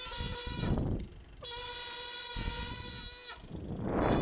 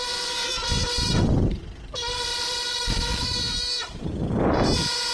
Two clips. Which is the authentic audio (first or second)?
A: first